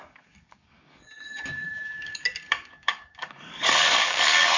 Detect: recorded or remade remade